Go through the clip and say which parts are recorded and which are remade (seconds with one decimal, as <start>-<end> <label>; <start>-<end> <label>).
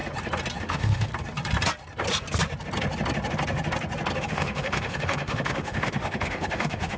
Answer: 0.0-0.6 recorded; 0.6-1.1 remade; 1.1-4.2 recorded; 4.2-7.0 remade